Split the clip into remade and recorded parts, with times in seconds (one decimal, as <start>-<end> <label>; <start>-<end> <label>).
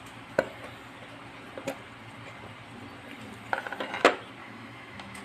0.0-4.4 recorded; 4.4-5.2 remade